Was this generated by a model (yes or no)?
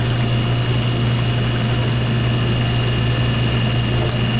no